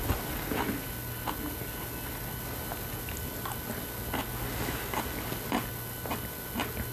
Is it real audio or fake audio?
real